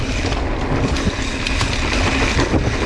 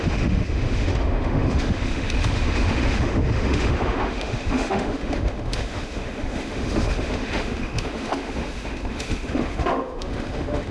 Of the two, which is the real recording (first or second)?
first